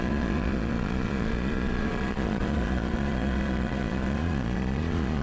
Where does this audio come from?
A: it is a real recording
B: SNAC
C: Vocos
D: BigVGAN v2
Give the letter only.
C